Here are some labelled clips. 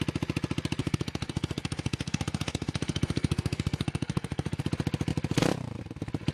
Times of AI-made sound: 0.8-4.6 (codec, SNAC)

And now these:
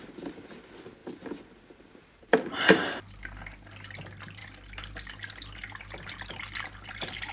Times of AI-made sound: none